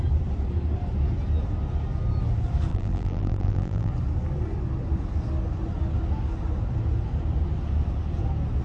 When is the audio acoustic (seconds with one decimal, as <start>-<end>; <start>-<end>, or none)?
0.0-2.7; 3.9-8.6